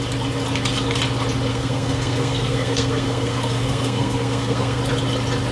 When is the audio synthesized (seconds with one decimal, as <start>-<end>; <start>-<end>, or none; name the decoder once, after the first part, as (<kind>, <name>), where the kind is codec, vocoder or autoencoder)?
1.5-4.8 (codec, SNAC)